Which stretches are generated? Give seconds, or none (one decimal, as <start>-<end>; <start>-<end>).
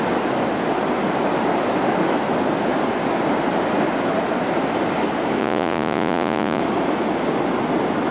5.4-6.6